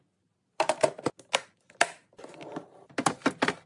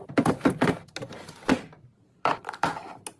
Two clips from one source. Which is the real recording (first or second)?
first